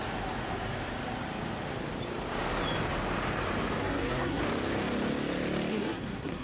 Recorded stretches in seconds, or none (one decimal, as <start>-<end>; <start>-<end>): 0.0-3.8; 4.4-5.7